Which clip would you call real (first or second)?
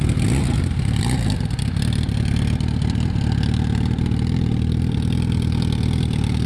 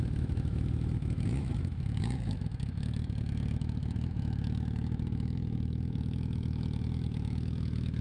first